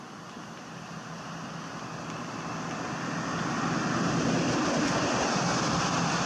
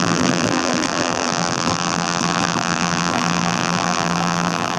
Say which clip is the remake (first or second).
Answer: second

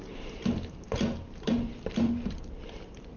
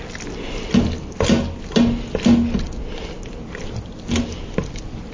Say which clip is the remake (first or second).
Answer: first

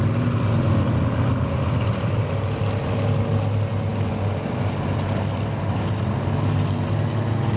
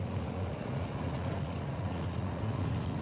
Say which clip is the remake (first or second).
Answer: second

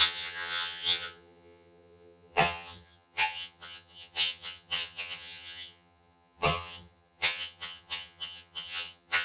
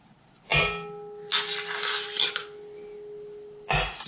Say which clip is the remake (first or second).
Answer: first